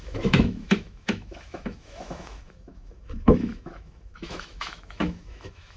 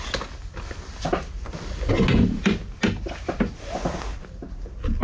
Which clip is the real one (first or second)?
second